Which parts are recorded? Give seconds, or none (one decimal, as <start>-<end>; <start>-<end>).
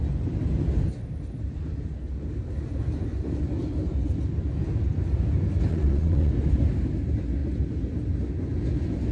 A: 0.0-5.7; 6.3-9.1